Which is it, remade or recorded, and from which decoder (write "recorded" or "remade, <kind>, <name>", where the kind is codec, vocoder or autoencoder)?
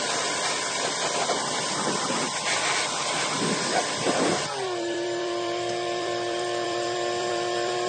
remade, vocoder, BigVGAN v2